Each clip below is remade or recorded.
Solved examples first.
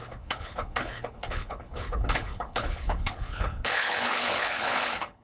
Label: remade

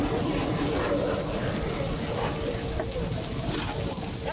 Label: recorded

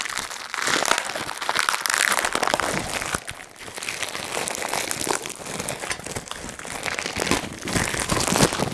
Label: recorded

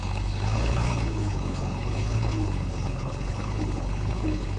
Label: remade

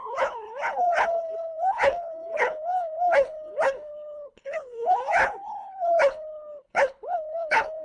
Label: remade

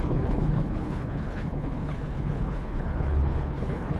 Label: remade